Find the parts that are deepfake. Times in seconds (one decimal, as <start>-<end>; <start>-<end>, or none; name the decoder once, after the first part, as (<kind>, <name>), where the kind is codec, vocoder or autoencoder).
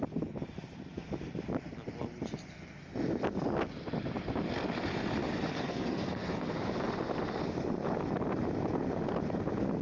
5.5-6.5 (codec, SNAC)